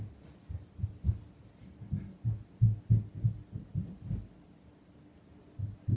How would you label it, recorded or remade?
recorded